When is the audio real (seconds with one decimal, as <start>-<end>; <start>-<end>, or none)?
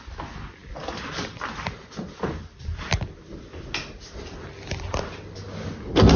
0.0-2.7; 3.2-6.2